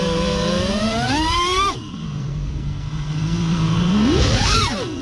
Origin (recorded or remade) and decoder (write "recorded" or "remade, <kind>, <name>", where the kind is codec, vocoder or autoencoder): remade, codec, SNAC